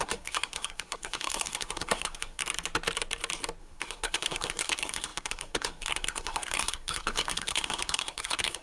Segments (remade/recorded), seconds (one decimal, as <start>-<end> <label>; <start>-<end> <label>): 0.0-2.4 remade; 2.4-3.6 recorded; 3.6-8.6 remade